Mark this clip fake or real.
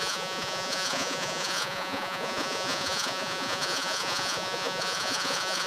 fake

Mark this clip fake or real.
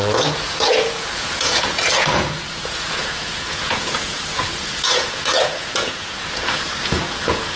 fake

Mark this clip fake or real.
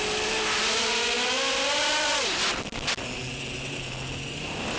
real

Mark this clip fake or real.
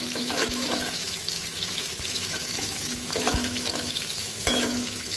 fake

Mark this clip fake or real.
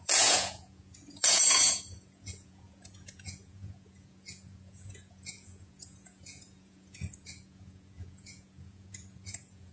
fake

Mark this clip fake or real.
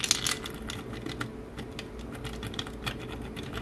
real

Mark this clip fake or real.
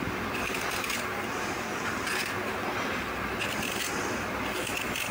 real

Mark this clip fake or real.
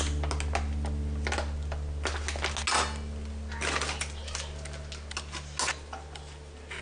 real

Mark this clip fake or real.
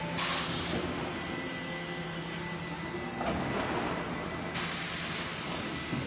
real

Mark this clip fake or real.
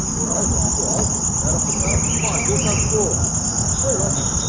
real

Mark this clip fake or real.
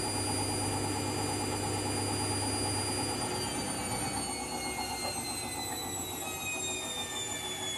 real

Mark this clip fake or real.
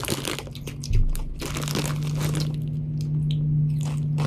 real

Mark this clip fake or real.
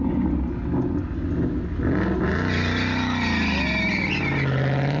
real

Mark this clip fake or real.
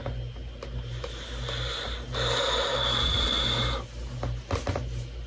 real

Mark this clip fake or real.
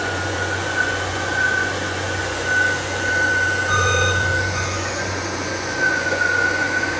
fake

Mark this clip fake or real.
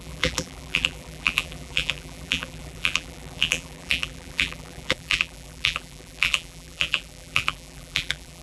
fake